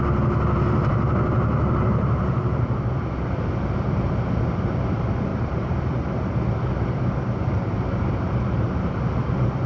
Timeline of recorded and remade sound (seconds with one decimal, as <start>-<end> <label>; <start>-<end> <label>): 0.0-0.9 recorded; 0.9-1.9 remade; 1.9-5.3 recorded; 5.3-5.9 remade; 5.9-7.5 recorded; 7.5-9.0 remade; 9.0-9.7 recorded